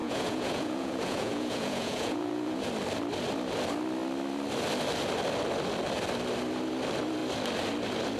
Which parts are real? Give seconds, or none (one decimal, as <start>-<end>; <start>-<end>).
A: 2.7-8.2

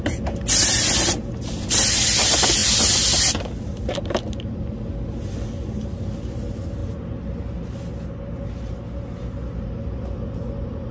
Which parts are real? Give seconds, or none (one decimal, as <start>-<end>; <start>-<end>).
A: 0.0-10.9

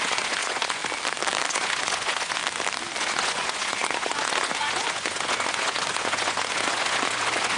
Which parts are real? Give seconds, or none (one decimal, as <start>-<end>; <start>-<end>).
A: 0.8-1.5; 2.4-3.0

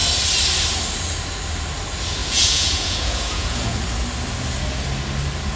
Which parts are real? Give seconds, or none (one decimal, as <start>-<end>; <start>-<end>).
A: 0.0-2.2; 3.8-5.6

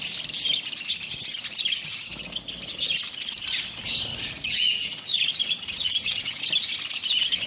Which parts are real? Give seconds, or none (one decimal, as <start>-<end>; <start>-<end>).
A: 0.0-4.1; 6.4-7.5

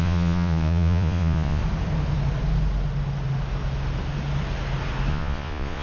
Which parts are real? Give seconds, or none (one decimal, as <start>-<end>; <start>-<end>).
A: 1.6-5.1

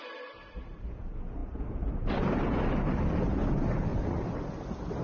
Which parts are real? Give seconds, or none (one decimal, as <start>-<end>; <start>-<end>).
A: 0.0-5.0